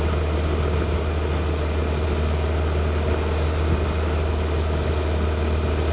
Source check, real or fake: real